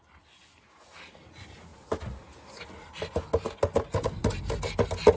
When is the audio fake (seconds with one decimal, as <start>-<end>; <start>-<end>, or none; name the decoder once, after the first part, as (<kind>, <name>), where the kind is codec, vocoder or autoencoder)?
none